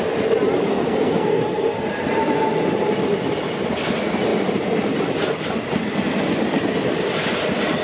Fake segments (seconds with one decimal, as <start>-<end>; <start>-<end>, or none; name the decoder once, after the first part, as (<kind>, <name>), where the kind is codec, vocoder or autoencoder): 0.7-1.4 (codec, SNAC)